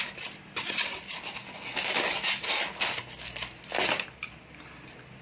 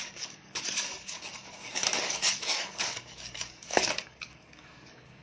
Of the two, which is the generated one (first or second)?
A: second